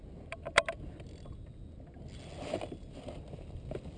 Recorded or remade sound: recorded